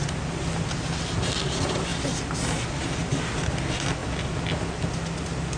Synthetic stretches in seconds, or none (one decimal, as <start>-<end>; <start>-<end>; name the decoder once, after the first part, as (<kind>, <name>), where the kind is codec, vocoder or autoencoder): none